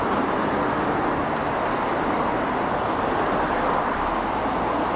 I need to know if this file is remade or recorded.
recorded